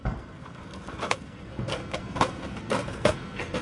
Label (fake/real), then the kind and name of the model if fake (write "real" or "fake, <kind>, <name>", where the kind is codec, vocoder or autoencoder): fake, codec, SNAC